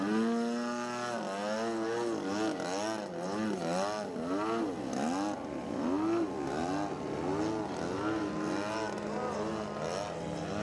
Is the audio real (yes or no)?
yes